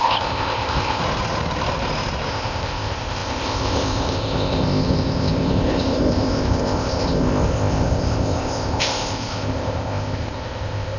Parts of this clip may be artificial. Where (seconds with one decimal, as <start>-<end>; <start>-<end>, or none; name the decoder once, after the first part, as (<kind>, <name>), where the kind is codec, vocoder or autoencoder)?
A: 0.0-1.0 (codec, ZipCodec); 2.3-11.0